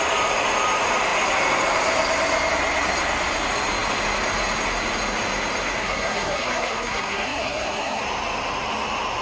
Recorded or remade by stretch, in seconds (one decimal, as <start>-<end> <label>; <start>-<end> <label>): 0.0-5.8 recorded; 5.8-8.0 remade; 8.0-9.2 recorded